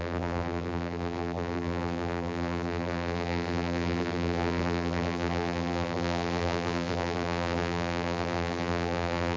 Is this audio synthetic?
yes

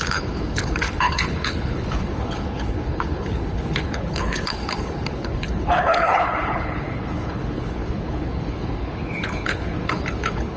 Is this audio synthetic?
yes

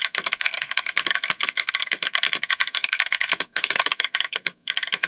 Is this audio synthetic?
yes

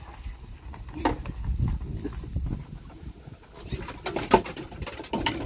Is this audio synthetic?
no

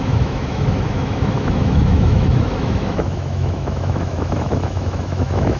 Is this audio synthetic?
yes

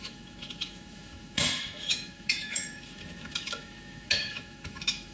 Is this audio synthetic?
yes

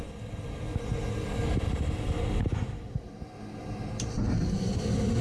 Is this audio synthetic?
no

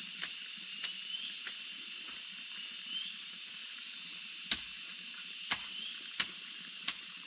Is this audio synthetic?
yes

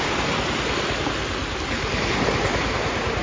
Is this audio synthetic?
no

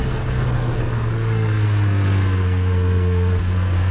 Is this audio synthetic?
yes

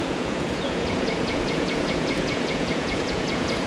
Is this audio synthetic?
yes